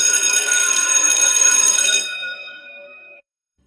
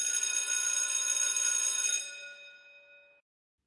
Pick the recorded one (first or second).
second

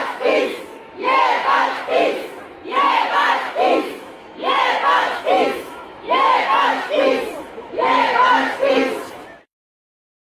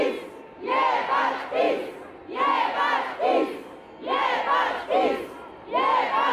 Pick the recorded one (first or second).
second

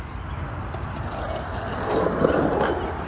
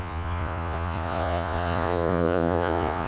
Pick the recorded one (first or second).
first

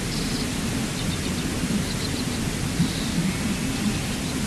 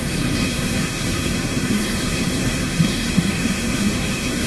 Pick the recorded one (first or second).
first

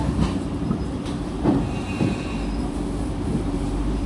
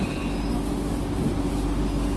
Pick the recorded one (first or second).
second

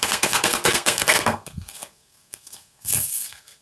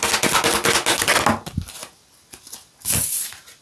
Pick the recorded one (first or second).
second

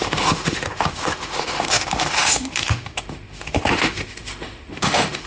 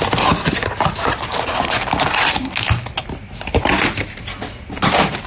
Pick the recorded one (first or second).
second